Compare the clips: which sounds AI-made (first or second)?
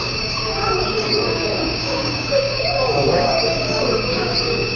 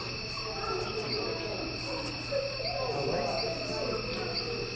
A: first